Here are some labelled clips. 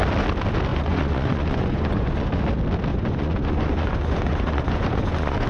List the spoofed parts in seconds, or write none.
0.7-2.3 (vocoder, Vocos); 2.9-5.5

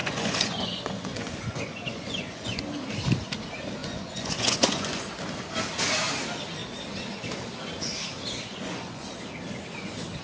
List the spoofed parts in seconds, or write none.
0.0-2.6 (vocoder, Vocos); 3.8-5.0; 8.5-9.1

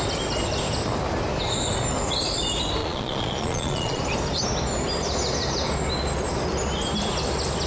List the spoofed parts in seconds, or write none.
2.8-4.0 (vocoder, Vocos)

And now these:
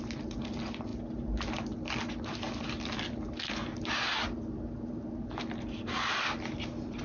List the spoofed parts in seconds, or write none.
none